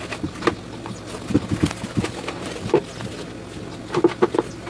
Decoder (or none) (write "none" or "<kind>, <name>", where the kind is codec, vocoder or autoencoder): none